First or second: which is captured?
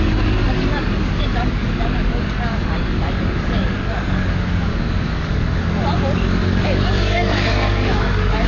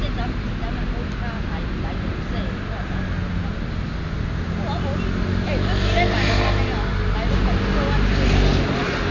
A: second